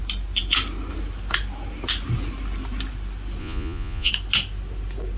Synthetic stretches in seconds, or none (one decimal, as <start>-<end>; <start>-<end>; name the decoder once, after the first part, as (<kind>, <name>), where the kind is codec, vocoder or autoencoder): 3.4-4.1 (vocoder, Vocos)